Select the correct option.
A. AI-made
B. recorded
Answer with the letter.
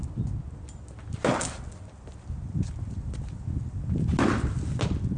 B